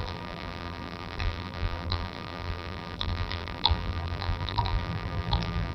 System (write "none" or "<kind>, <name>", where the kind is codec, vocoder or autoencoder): vocoder, BigVGAN v2